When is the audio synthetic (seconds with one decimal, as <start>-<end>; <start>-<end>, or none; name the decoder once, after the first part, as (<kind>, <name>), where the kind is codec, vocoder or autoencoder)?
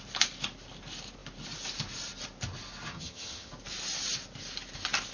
2.9-3.5 (vocoder, HiFi-GAN)